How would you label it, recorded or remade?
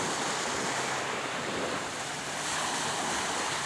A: recorded